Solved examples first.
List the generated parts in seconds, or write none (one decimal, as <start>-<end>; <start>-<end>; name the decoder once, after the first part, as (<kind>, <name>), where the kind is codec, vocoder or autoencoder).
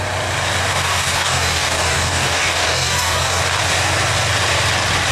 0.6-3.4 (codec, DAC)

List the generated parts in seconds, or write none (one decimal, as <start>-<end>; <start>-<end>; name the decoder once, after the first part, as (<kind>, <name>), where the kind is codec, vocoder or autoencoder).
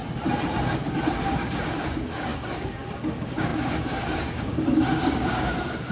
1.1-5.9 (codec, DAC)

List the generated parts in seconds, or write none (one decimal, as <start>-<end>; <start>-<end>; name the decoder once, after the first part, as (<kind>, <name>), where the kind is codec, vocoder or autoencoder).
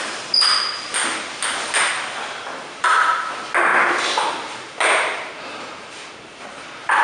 none